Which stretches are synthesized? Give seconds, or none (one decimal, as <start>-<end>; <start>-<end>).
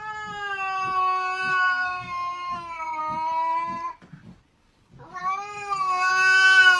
1.5-3.0; 5.2-6.1